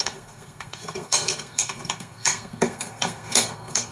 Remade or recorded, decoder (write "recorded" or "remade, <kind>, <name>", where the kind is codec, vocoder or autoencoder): remade, codec, SNAC